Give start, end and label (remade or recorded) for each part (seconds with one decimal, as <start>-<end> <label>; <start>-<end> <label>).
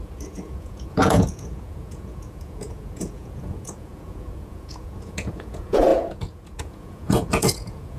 0.0-8.0 remade